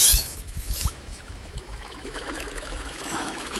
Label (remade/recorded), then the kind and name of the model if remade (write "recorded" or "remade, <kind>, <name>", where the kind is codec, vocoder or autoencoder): remade, autoencoder, DAC-VAE